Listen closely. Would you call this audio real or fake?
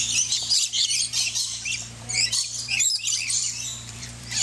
fake